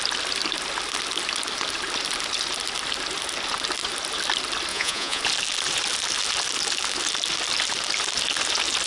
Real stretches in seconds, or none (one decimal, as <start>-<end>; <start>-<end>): 0.0-4.7; 5.2-8.9